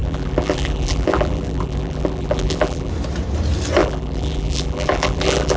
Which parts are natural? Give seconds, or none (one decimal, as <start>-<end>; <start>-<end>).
2.9-3.8